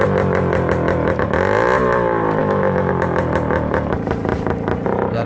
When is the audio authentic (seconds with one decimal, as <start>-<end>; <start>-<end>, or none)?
0.0-2.4; 2.9-5.3